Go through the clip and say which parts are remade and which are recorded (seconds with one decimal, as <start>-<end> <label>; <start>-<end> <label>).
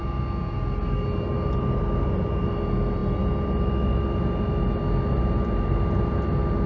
0.0-6.7 recorded